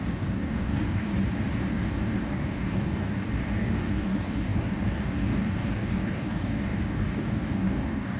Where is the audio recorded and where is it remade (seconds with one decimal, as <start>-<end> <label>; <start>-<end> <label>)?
0.0-1.1 remade; 1.1-1.7 recorded; 1.7-8.2 remade